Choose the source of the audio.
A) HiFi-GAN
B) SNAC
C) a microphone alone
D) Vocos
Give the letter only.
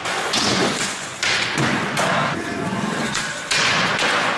D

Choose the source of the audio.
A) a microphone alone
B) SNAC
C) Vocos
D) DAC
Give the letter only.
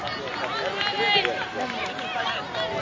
A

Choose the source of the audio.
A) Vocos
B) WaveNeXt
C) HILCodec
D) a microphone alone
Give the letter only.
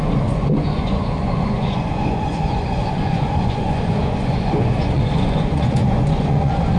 A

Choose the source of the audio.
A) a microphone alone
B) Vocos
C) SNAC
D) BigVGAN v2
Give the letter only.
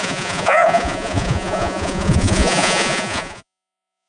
B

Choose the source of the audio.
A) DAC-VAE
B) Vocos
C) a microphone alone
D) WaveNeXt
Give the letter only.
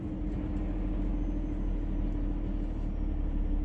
C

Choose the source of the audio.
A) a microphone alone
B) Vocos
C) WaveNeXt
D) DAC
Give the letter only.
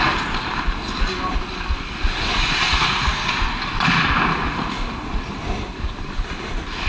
A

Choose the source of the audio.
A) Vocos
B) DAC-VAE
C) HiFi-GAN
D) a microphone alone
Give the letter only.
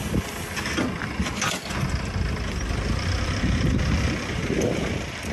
D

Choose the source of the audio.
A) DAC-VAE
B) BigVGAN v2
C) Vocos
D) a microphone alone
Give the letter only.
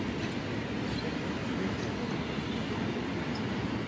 D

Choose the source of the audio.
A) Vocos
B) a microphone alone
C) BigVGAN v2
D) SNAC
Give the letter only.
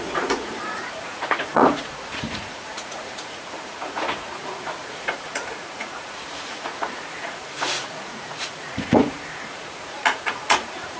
A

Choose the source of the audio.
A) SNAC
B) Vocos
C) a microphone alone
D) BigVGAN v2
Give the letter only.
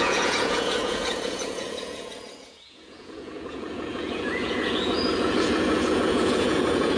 B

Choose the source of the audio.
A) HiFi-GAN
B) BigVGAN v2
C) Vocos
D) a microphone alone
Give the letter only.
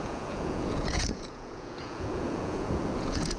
C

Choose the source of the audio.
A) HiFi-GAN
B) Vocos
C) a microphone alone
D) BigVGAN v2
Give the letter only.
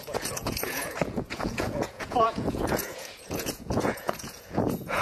B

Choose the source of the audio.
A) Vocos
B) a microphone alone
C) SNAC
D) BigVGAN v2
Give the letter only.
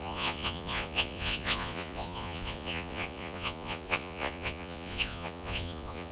A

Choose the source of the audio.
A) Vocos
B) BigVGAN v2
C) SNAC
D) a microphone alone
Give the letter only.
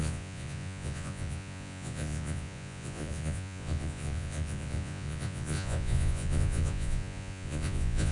A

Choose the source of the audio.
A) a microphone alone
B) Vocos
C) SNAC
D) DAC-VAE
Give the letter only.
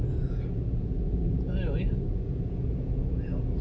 B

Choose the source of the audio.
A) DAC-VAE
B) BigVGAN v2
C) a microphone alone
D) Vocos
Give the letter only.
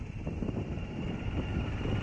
C